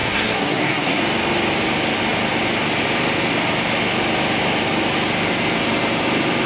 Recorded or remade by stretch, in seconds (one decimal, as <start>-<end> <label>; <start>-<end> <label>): 0.0-1.0 remade; 1.0-6.5 recorded